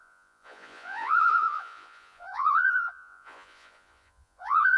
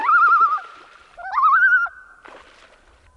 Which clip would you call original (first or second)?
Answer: second